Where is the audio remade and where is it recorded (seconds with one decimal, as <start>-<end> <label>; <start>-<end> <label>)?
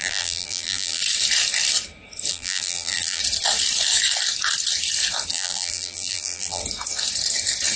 0.0-1.0 remade; 1.0-2.3 recorded; 2.3-3.2 remade; 3.2-5.3 recorded; 5.3-6.6 remade; 6.6-7.8 recorded